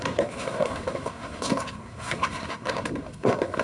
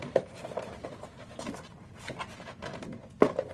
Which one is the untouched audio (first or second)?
second